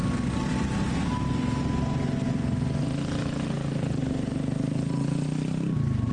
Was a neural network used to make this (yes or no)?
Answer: no